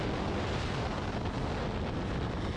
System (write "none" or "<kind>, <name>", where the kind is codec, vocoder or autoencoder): none